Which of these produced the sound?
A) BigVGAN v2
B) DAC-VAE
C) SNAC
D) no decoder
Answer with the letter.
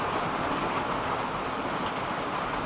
D